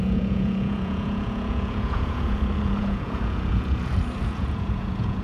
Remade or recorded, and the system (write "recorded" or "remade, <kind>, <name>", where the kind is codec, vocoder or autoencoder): remade, vocoder, Vocos